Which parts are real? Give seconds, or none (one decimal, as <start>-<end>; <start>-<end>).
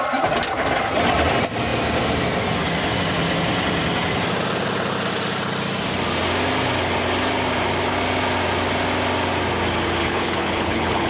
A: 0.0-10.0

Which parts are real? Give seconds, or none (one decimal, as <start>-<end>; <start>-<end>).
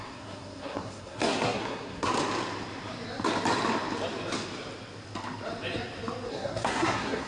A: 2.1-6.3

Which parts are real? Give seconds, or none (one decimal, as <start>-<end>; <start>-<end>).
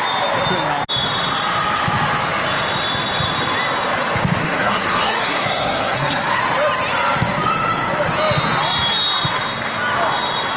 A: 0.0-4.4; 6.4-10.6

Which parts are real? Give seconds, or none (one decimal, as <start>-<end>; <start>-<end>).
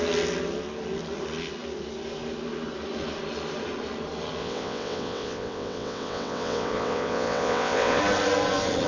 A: 0.0-4.4; 8.0-8.9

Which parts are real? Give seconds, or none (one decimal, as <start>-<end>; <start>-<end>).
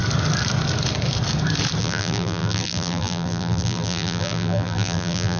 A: 0.0-1.8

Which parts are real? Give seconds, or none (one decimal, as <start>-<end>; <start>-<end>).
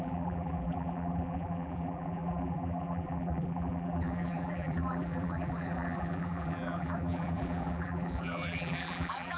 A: none